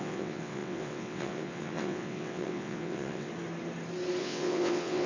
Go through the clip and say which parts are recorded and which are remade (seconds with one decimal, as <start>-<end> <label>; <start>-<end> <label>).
0.0-3.3 remade; 3.3-4.2 recorded; 4.2-5.1 remade